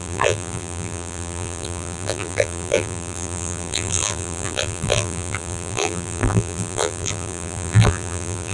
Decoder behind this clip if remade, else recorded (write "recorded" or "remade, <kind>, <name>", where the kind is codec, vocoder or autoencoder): remade, vocoder, BigVGAN v2